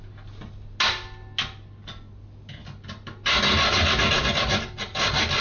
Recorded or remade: recorded